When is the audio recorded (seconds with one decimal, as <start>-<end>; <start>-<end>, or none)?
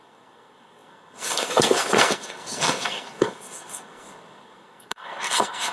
none